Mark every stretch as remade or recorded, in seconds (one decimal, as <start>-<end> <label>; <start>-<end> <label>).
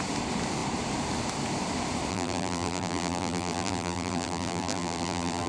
0.0-2.1 recorded; 2.1-5.5 remade